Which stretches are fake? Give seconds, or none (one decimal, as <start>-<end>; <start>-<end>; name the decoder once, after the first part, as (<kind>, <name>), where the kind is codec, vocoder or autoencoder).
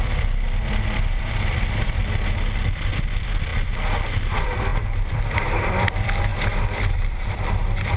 0.0-2.0 (vocoder, BigVGAN v2); 2.9-8.0